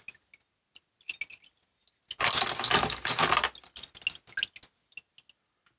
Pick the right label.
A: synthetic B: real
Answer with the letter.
B